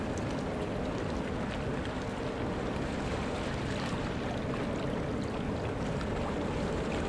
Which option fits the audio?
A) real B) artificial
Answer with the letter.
A